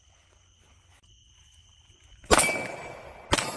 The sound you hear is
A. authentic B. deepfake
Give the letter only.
A